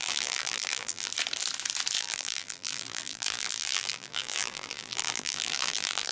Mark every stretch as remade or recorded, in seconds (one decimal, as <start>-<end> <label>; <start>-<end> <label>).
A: 0.0-1.1 remade; 1.1-2.0 recorded; 2.0-6.1 remade